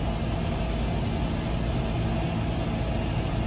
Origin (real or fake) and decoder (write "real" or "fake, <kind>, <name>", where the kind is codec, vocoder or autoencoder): real